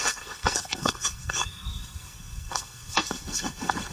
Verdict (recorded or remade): remade